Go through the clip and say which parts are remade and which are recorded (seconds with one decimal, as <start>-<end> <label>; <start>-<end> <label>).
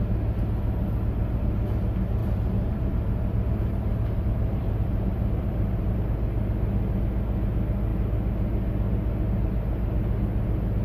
0.0-2.2 recorded; 2.2-6.0 remade; 6.0-10.8 recorded